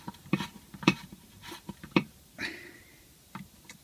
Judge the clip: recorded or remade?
remade